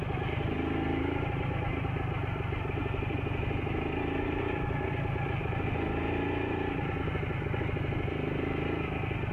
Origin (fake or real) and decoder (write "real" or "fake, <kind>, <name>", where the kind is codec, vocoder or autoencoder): real